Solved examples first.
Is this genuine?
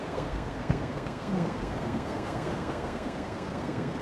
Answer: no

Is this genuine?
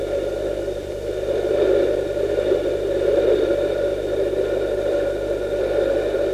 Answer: no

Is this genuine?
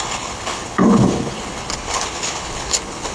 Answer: no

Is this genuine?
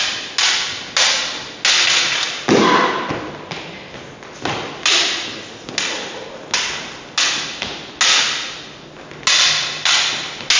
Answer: yes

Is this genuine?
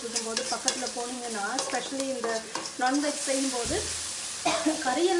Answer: yes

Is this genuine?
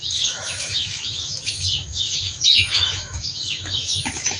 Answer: no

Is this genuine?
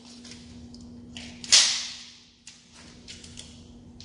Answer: yes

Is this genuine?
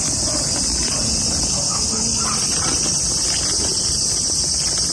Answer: yes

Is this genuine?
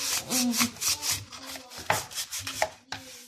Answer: yes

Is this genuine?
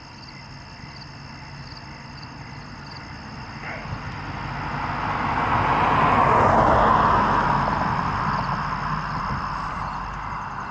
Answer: yes